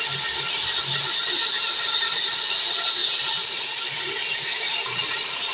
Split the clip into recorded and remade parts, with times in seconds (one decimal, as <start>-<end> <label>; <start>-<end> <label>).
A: 0.0-1.2 recorded; 1.2-2.5 remade; 2.5-3.0 recorded; 3.0-3.6 remade; 3.6-4.3 recorded; 4.3-5.0 remade; 5.0-5.5 recorded